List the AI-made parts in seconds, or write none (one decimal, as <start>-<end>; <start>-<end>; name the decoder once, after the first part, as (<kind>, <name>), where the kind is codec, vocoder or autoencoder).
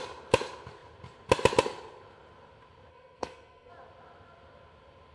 2.9-3.7 (codec, SNAC)